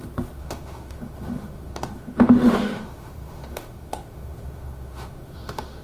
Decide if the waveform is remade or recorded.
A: remade